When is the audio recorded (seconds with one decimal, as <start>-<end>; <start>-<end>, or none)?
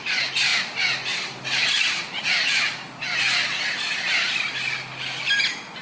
0.0-5.8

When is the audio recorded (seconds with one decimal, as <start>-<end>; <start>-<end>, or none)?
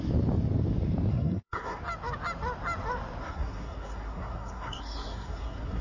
0.0-1.1; 1.8-3.2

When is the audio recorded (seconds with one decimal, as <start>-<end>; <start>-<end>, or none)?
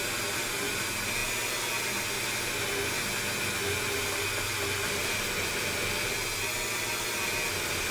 0.0-7.9